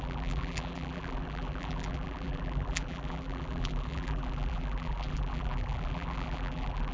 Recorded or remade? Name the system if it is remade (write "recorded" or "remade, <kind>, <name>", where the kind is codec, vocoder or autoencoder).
remade, vocoder, BigVGAN v2